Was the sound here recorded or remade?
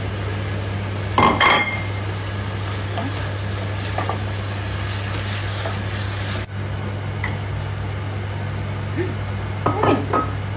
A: recorded